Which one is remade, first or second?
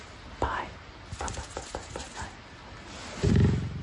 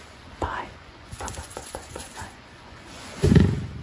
second